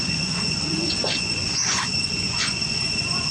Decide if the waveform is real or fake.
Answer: fake